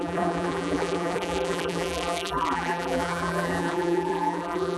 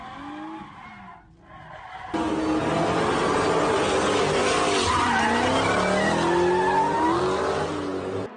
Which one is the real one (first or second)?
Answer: second